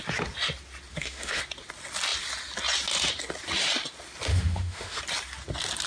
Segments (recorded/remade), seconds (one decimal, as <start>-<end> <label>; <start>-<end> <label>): 0.0-0.9 recorded; 0.9-1.4 remade; 1.4-4.3 recorded; 4.3-5.0 remade; 5.0-5.9 recorded